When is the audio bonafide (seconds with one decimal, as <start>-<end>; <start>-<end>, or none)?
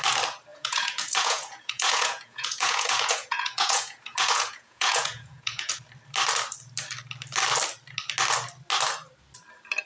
0.0-0.5; 5.7-9.9